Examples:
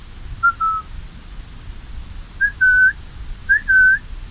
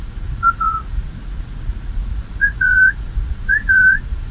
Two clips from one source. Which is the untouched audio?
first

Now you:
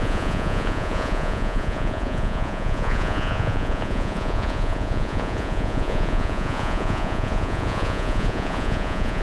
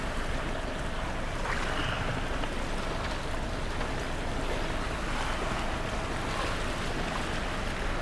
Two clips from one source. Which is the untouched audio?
second